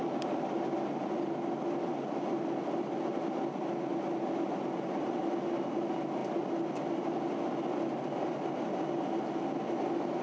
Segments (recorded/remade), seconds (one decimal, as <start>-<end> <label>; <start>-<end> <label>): 0.0-10.2 recorded